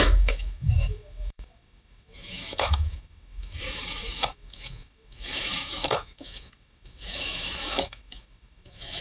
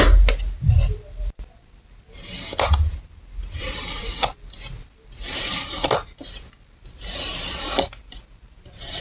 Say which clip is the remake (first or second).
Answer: first